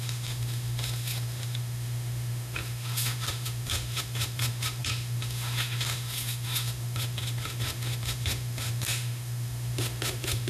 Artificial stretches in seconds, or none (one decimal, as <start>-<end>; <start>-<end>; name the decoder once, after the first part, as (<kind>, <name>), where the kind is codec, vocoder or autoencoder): 0.0-10.5 (autoencoder, DAC-VAE)